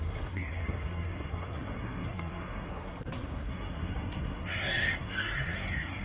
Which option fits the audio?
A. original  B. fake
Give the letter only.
B